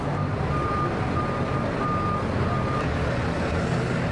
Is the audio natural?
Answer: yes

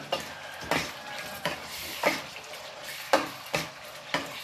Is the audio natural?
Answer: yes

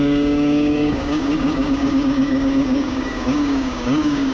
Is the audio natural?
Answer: no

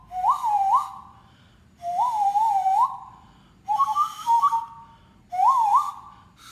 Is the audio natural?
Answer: yes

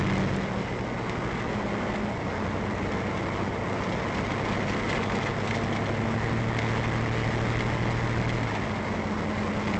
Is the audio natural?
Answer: yes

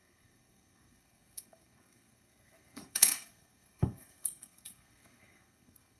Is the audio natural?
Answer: no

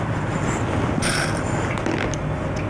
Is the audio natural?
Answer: yes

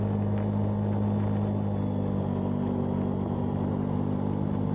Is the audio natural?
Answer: yes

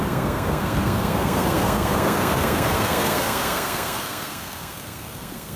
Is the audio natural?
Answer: no